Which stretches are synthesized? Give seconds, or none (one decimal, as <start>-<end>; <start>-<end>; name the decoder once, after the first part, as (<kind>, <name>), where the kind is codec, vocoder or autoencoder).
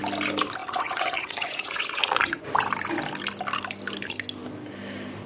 0.6-2.4 (vocoder, Vocos)